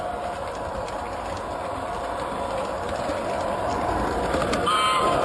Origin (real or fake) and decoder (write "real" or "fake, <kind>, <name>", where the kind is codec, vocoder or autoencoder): real